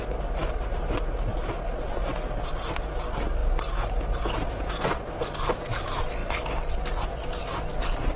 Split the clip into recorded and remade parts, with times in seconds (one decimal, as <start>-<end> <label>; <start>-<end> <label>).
0.0-8.2 recorded